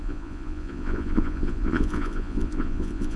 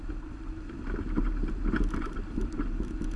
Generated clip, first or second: first